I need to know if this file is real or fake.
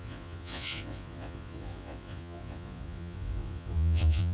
fake